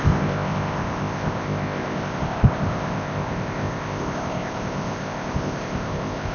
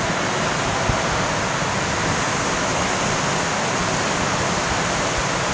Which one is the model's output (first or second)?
first